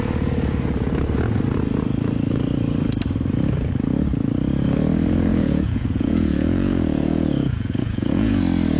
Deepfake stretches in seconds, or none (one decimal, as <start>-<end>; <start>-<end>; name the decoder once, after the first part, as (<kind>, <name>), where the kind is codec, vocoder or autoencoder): 5.3-8.4 (vocoder, Vocos)